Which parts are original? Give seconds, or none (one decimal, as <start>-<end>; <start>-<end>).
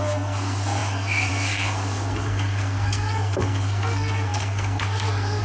none